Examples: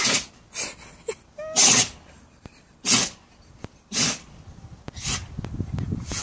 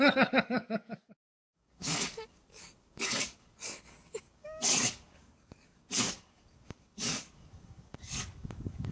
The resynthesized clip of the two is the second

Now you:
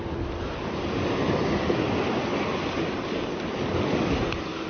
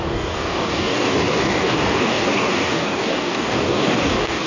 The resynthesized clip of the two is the second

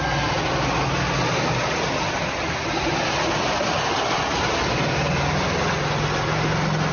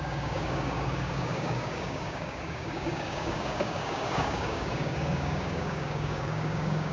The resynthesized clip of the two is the second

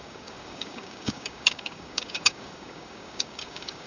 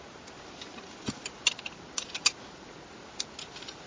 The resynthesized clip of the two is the first